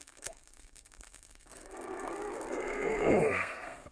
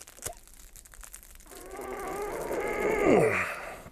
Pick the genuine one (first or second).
second